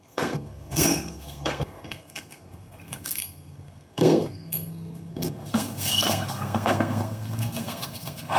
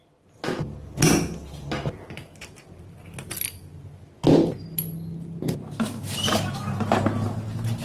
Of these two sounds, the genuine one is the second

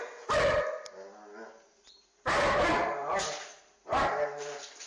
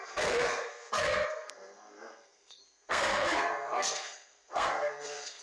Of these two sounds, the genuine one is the first